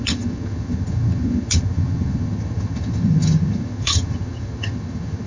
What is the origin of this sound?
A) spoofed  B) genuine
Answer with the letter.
A